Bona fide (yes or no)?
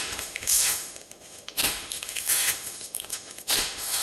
no